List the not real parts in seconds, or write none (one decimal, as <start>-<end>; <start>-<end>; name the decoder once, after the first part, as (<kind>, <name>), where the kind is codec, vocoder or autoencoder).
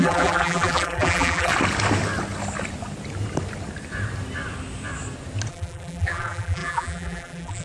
0.0-1.5 (vocoder, BigVGAN v2); 5.5-7.6